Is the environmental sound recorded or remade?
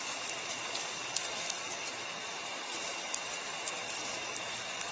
recorded